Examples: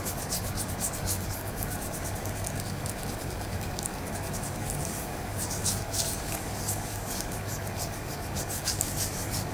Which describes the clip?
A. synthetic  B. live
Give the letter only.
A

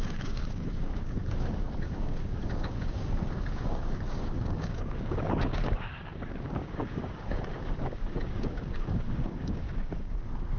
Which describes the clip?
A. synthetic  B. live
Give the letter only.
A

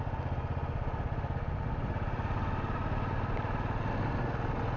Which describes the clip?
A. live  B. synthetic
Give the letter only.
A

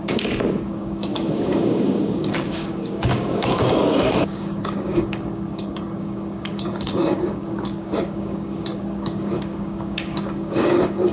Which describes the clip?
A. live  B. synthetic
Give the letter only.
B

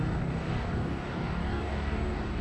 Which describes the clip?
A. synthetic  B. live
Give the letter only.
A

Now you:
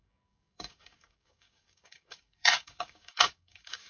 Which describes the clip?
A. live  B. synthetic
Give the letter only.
B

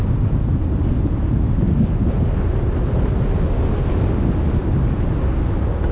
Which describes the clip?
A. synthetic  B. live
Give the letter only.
B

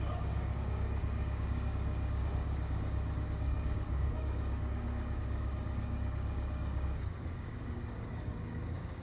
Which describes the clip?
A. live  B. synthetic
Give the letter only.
B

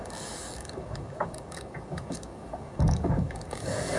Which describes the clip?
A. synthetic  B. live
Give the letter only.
A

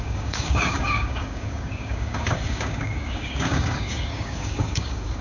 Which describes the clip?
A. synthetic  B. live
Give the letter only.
A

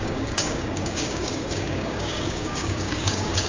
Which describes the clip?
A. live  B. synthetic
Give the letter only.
B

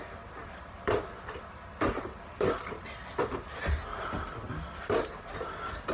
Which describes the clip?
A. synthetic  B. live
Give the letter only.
B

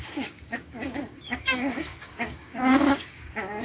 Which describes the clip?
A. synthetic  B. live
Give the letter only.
A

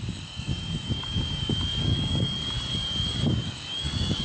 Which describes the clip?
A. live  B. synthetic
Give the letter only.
B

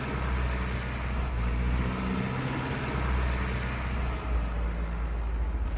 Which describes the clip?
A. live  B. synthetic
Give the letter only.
A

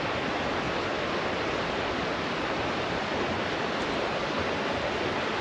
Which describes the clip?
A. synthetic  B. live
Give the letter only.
B